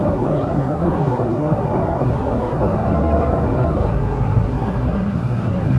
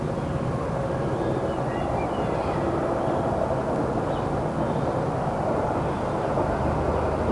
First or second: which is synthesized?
first